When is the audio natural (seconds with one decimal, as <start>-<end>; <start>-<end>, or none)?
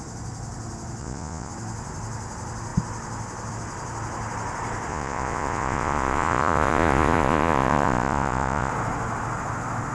0.0-1.0; 1.5-4.9; 8.7-9.9